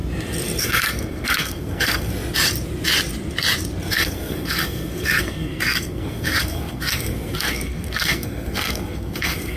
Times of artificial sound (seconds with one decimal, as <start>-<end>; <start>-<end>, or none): 0.6-2.1; 3.9-9.6